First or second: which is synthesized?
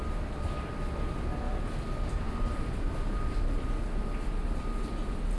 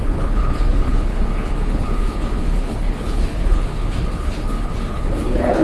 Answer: second